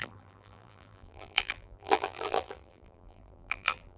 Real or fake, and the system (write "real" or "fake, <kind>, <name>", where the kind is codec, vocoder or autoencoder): fake, vocoder, BigVGAN v2